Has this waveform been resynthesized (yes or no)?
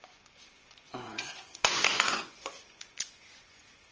yes